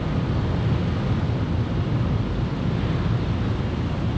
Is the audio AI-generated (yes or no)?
no